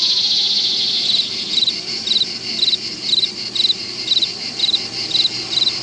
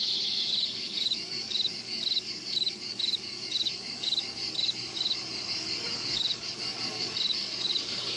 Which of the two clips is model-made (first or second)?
second